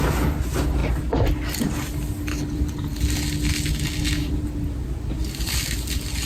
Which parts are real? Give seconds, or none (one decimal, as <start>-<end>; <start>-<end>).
0.0-6.3